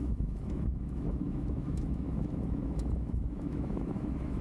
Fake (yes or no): yes